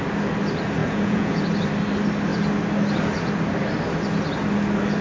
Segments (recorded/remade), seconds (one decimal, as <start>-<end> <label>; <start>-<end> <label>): 0.0-0.8 recorded; 0.8-1.4 remade; 1.4-5.0 recorded